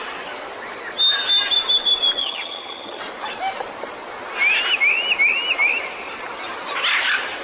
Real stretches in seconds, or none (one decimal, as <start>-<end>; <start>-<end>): 0.0-2.2; 3.0-7.4